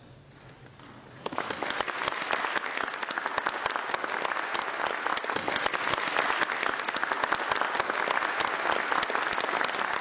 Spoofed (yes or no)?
no